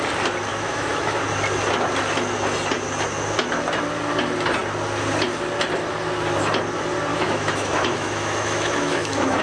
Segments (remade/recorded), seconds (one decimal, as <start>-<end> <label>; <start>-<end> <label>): 0.0-0.5 recorded; 0.5-1.2 remade; 1.2-7.1 recorded; 7.1-9.4 remade